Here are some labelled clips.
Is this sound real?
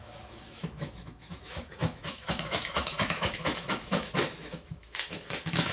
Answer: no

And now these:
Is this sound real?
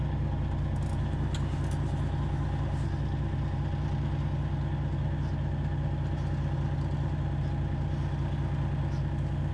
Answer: yes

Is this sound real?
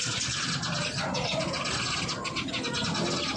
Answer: yes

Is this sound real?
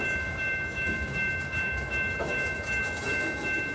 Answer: no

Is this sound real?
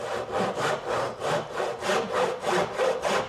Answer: yes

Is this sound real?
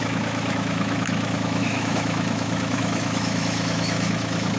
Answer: no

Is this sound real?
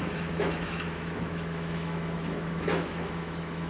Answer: no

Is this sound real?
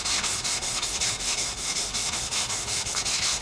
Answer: no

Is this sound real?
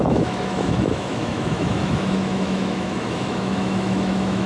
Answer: no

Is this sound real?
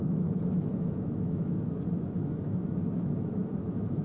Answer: no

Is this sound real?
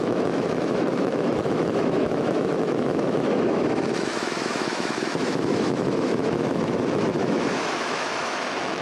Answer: no